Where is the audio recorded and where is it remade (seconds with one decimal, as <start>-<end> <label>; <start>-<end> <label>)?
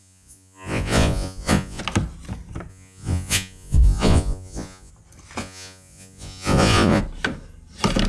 0.0-1.8 remade; 1.8-2.7 recorded; 2.7-4.9 remade; 4.9-5.4 recorded; 5.4-7.0 remade; 7.0-8.1 recorded